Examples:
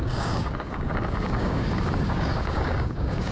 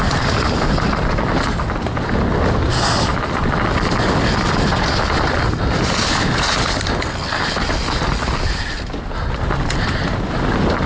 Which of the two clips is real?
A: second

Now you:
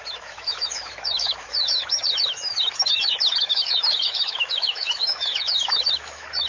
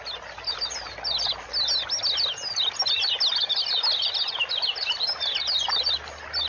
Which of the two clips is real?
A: second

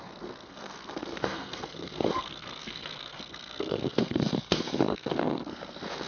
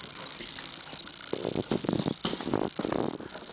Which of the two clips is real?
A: second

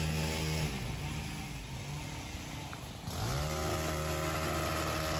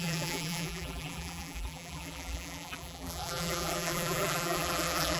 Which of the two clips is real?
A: first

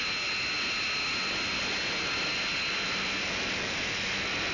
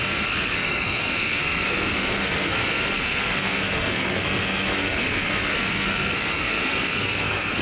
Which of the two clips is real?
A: first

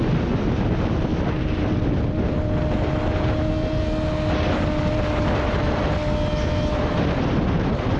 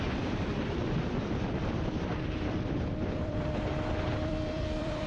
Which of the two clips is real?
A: first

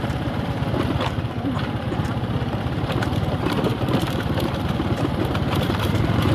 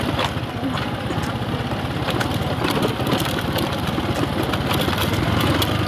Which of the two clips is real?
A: second